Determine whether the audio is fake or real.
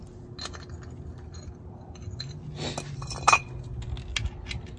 real